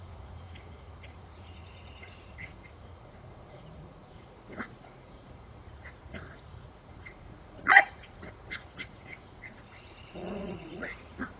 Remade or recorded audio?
remade